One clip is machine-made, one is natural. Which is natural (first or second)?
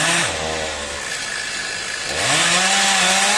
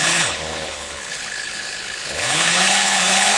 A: first